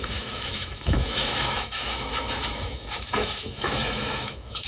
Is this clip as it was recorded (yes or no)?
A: no